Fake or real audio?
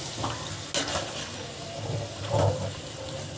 real